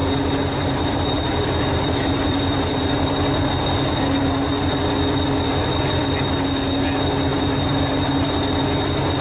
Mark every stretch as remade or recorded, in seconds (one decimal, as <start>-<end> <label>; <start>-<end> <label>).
0.0-3.5 remade; 3.5-4.2 recorded; 4.2-4.8 remade; 4.8-7.3 recorded; 7.3-8.5 remade; 8.5-9.2 recorded